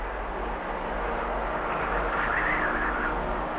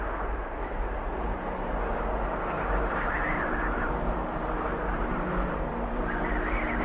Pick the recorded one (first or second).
first